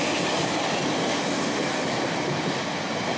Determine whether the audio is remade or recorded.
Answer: recorded